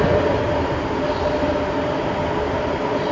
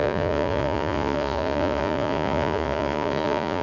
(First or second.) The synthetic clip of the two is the second